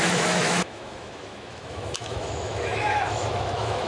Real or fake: fake